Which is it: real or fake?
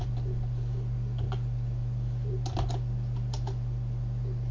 real